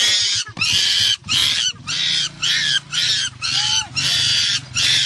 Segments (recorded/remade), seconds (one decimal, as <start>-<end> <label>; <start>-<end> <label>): 0.0-5.1 recorded